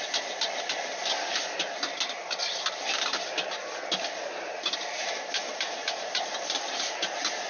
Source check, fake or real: real